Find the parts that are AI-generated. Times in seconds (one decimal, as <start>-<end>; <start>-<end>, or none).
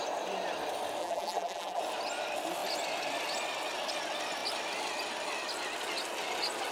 1.0-1.8